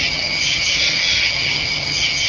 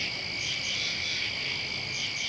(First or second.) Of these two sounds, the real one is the second